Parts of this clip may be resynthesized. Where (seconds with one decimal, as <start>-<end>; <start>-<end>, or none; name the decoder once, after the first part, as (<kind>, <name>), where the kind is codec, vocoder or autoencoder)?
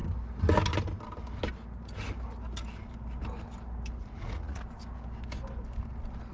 4.0-4.6 (vocoder, Vocos)